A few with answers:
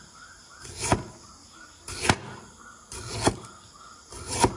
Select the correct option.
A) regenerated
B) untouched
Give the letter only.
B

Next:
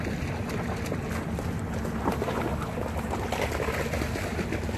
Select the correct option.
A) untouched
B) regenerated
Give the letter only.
A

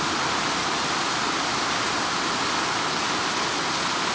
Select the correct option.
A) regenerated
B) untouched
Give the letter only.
B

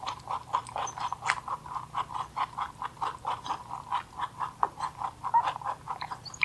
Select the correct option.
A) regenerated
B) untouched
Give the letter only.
B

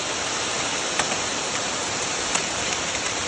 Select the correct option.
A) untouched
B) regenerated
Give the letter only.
B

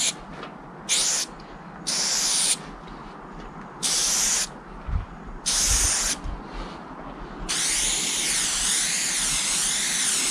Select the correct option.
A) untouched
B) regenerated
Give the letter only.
A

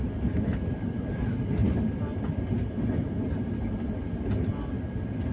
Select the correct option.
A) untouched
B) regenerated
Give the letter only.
A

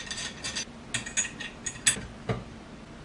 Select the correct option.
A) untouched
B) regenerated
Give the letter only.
A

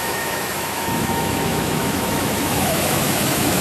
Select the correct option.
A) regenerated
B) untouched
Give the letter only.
A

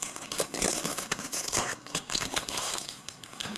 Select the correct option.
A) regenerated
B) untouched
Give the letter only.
A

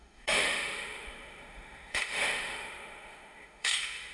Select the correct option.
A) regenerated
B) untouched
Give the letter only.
A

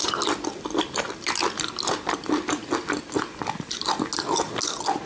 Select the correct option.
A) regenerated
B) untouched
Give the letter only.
B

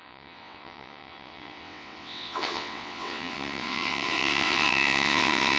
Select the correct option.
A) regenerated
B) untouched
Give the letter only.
A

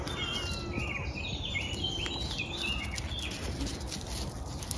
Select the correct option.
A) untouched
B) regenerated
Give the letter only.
A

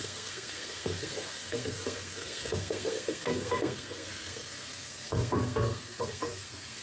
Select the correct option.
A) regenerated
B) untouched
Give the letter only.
A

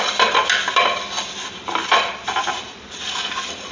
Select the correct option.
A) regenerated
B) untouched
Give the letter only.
B